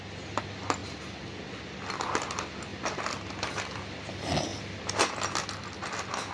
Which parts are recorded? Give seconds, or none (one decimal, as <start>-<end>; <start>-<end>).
0.0-6.3